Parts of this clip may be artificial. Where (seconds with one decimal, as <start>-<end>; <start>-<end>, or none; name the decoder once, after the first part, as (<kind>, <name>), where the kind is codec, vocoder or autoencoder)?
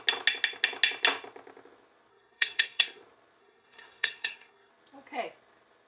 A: 2.1-3.0 (codec, SNAC); 3.4-4.7